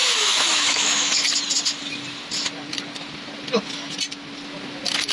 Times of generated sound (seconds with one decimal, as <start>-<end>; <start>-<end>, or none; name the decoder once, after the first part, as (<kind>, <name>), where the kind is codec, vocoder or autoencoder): 0.0-1.1 (autoencoder, DAC-VAE)